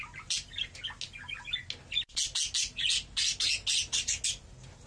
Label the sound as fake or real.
real